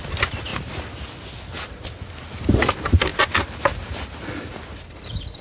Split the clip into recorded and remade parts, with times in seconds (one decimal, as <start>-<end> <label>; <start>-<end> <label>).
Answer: 0.0-5.4 recorded